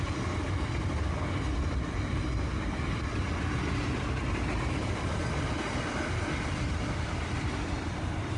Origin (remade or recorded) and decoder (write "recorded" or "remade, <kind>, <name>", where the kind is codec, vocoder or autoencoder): recorded